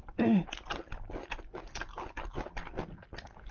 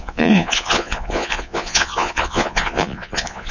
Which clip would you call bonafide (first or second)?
first